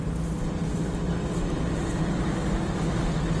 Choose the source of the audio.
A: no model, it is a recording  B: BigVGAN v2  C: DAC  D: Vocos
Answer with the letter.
A